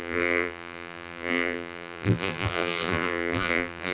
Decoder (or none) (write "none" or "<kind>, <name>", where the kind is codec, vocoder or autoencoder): vocoder, BigVGAN v2